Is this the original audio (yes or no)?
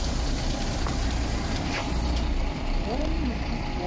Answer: yes